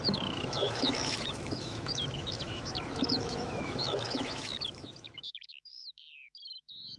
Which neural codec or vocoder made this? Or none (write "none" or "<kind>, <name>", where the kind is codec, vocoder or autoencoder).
autoencoder, DAC-VAE